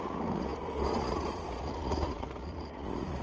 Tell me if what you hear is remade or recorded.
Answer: remade